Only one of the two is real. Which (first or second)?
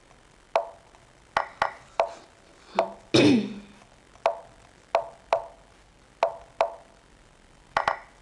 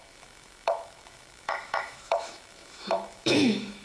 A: first